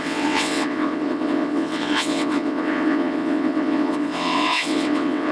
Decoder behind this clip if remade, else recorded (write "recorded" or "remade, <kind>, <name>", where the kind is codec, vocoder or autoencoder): remade, vocoder, WaveNeXt